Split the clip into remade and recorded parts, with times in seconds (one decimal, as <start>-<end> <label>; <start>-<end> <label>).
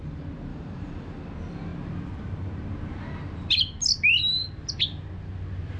0.0-0.5 recorded; 0.5-1.2 remade; 1.2-5.8 recorded